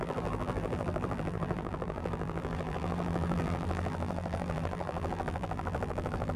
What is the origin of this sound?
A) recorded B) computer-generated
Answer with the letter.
B